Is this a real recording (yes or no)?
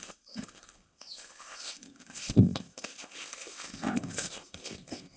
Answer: no